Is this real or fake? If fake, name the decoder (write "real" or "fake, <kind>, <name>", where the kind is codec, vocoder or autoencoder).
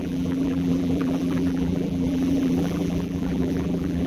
fake, vocoder, BigVGAN v2